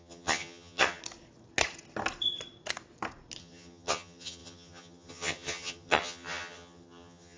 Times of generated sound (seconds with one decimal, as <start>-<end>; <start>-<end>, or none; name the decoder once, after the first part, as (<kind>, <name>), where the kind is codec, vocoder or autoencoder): 0.0-1.0 (vocoder, HiFi-GAN); 3.4-7.4